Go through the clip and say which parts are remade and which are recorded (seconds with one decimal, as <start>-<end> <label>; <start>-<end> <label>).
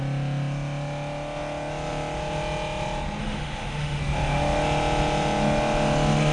0.0-3.2 recorded; 3.2-4.0 remade; 4.0-6.3 recorded